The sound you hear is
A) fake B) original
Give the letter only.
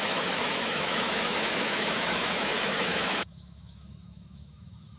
A